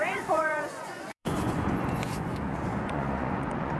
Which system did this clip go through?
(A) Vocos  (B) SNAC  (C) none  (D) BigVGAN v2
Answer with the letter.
A